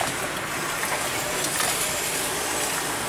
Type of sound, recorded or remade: recorded